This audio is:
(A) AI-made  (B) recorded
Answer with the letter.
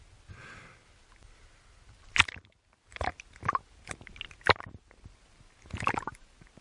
B